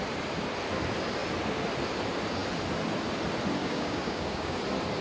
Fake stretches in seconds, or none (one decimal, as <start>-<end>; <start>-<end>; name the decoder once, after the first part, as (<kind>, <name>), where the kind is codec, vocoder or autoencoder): 3.6-4.6 (codec, DAC)